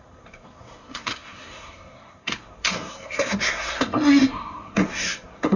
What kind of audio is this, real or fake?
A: fake